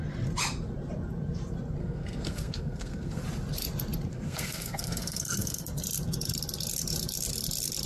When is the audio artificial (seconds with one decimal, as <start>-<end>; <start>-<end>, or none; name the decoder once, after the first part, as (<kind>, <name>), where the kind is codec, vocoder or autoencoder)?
1.8-3.2 (codec, SNAC); 4.1-5.7